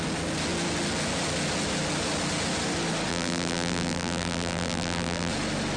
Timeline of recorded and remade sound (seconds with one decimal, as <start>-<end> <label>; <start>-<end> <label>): 0.0-3.1 recorded; 3.1-5.3 remade; 5.3-5.8 recorded